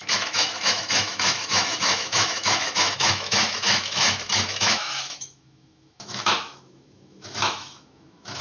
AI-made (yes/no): yes